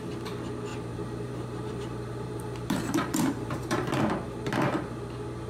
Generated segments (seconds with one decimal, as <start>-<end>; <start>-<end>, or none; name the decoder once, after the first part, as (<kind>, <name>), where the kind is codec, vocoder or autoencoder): 0.7-4.0 (vocoder, BigVGAN v2)